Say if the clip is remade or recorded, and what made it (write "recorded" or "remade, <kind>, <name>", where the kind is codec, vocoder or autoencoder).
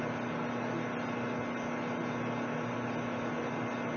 recorded